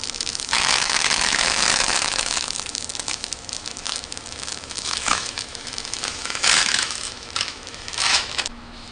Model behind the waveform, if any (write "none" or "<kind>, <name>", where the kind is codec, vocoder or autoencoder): autoencoder, DAC-VAE